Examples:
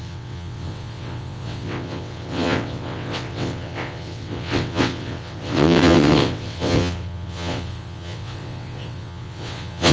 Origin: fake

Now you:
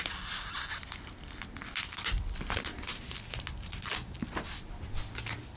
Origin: real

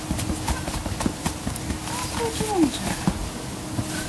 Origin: real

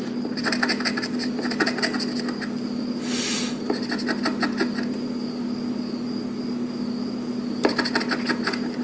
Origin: real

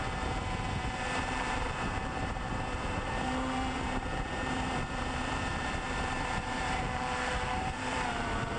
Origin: fake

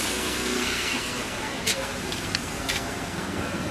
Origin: fake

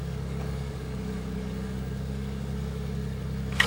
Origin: fake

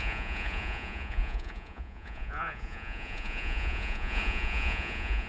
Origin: fake